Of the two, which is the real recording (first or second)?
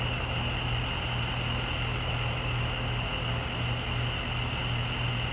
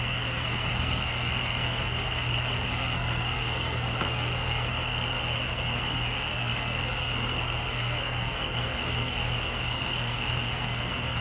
first